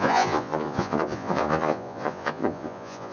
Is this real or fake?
fake